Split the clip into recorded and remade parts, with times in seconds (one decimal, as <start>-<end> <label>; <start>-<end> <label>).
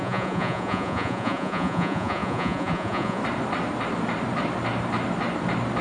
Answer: 0.0-3.2 remade; 3.2-5.8 recorded